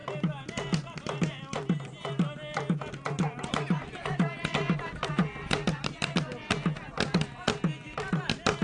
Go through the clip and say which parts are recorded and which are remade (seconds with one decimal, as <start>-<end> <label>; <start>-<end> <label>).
0.0-8.6 recorded